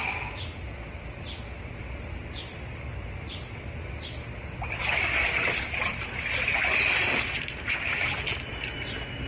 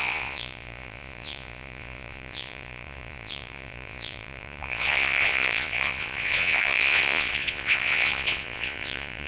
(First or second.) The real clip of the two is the first